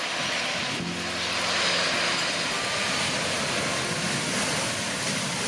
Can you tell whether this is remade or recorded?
recorded